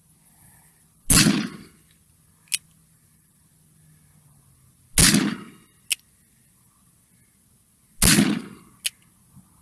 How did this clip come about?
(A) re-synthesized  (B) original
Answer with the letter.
B